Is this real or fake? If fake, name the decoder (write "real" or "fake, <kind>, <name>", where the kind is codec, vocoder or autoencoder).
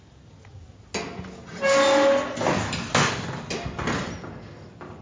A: real